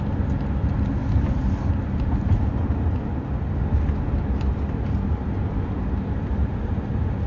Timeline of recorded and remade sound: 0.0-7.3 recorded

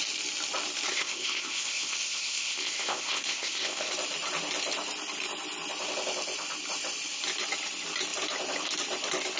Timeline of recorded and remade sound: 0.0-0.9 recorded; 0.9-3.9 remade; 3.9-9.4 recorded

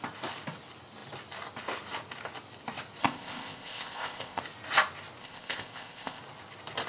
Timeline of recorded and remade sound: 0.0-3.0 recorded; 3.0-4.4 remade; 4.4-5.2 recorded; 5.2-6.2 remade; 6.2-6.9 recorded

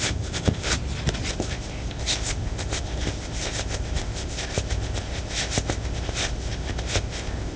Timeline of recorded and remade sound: 0.0-0.7 remade; 0.7-1.3 recorded; 1.3-7.6 remade